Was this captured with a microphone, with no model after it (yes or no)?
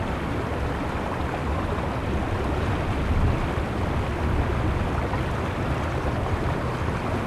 yes